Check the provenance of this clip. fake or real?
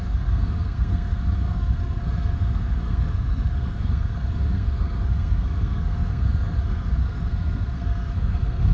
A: fake